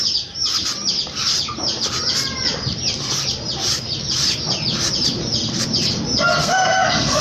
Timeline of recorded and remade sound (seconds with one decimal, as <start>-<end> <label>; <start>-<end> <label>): 0.0-6.4 recorded; 6.4-7.2 remade